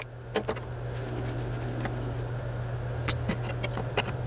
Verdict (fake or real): real